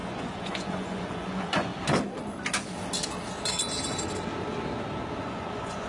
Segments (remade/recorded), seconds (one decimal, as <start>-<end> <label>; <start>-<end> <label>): 0.0-1.7 remade; 1.7-5.2 recorded; 5.2-5.9 remade